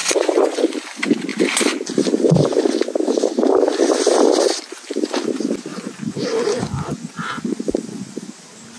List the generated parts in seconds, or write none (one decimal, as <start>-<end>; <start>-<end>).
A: 0.0-0.6; 5.7-8.3